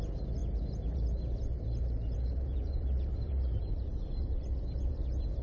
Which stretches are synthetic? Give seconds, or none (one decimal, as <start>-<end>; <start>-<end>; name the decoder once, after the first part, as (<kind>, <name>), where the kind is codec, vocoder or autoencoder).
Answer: 0.0-5.4 (vocoder, BigVGAN v2)